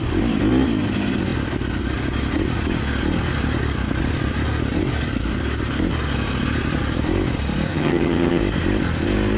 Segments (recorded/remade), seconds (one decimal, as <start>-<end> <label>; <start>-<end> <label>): 0.0-7.7 recorded; 7.7-8.4 remade; 8.4-9.4 recorded